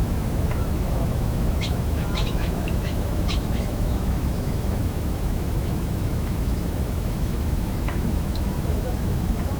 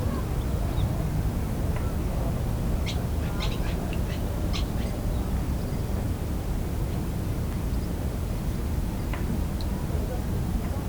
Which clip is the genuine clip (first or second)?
second